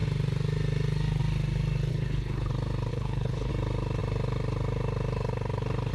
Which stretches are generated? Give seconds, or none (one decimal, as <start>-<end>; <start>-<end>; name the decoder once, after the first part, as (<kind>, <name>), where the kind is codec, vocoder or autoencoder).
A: 1.9-2.5 (codec, HILCodec); 2.9-3.5